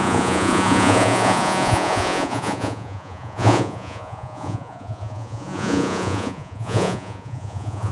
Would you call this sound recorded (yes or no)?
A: no